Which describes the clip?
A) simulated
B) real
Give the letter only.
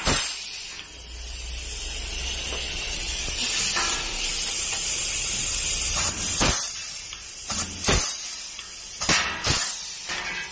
B